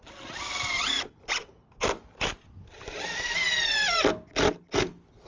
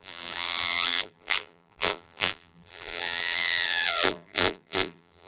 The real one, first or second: first